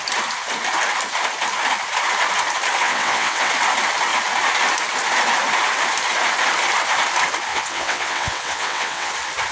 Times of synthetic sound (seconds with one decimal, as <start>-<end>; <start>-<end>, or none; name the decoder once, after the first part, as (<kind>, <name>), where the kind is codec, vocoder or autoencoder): 2.8-3.5 (vocoder, WaveNeXt); 7.5-9.1